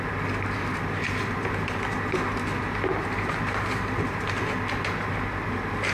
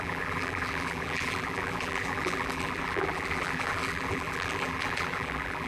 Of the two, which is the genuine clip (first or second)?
first